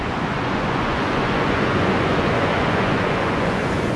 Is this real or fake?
fake